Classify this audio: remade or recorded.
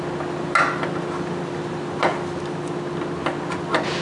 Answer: recorded